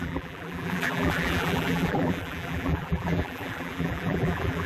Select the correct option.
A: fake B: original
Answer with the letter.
A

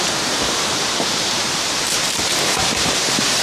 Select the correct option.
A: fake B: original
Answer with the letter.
A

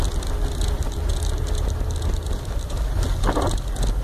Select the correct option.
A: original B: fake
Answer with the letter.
A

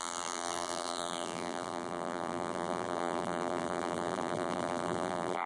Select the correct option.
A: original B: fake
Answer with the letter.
B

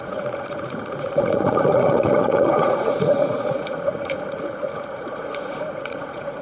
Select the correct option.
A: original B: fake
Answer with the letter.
B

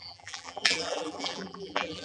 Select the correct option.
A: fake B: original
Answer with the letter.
A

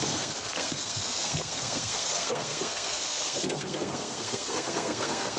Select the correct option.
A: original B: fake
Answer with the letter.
B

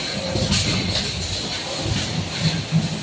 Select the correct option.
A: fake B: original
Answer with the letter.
B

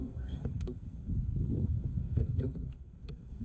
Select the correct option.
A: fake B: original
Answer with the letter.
A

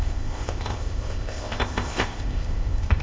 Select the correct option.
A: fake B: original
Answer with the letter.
A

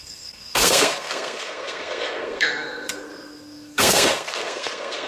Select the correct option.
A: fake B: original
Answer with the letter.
A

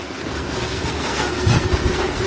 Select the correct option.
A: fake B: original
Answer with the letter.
A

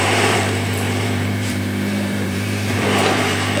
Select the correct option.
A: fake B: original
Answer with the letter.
A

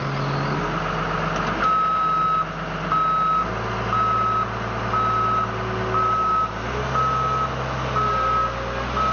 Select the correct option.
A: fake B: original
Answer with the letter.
B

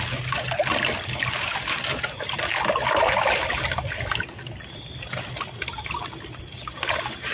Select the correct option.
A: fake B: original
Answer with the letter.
B